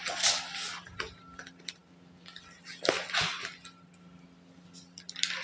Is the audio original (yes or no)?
yes